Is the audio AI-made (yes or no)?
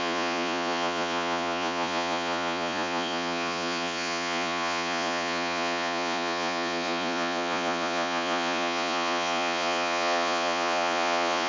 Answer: yes